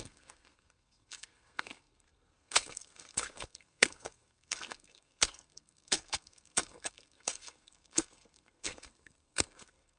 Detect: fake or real fake